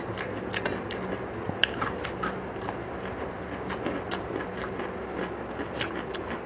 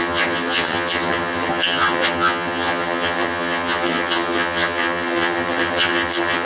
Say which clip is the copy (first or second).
second